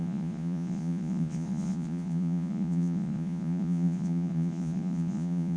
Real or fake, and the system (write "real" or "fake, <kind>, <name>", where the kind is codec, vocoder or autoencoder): fake, vocoder, Vocos